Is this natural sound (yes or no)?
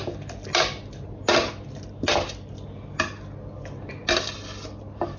yes